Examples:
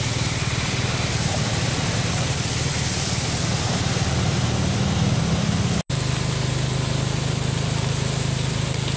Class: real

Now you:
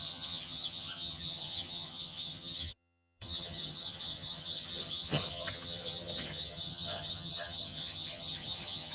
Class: fake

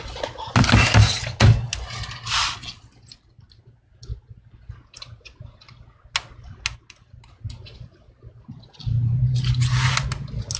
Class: real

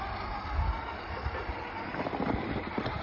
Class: real